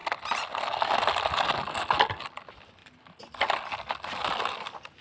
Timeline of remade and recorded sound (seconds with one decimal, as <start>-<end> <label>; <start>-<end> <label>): 0.0-5.0 recorded